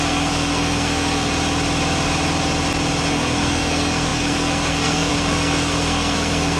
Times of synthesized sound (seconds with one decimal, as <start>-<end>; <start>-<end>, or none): 0.0-1.3; 3.1-6.6